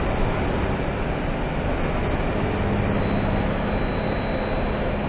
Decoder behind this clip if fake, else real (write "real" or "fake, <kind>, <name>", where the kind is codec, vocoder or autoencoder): real